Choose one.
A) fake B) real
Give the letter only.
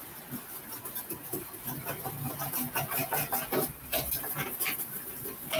B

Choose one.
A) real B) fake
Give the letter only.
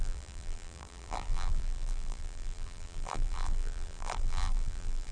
B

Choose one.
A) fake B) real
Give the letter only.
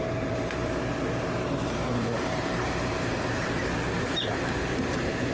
A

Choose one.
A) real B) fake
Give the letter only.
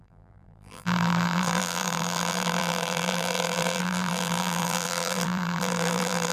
B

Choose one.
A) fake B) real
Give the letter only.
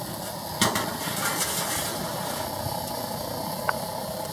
B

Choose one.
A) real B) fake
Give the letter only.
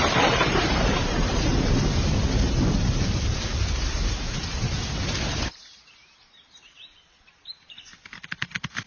B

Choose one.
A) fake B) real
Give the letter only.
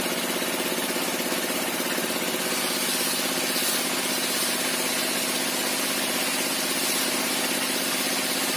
B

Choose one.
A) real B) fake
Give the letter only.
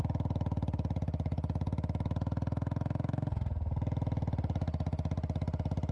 A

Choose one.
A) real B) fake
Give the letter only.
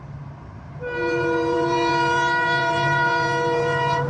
B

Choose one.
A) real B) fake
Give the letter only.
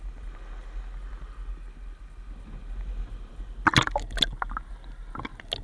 A